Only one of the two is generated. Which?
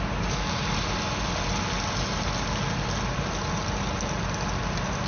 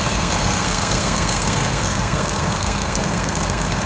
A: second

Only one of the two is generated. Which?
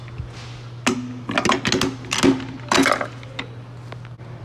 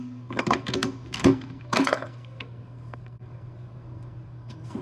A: second